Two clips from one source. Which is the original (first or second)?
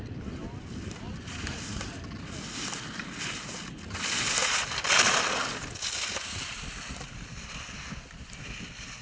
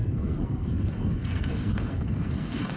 first